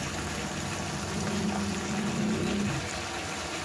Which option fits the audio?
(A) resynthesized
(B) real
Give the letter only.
B